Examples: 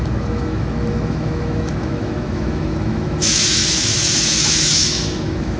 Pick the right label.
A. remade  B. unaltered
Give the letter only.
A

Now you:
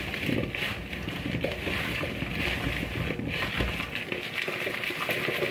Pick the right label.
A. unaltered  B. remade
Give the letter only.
A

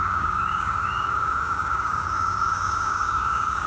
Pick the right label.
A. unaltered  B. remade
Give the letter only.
B